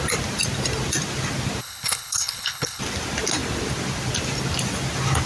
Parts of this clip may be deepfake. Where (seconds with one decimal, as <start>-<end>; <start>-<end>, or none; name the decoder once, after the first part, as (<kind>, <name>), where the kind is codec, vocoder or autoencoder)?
1.6-2.8 (codec, HILCodec)